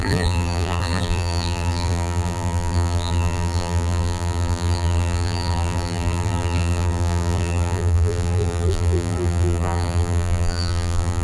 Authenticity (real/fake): fake